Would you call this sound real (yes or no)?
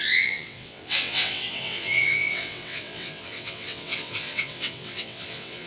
no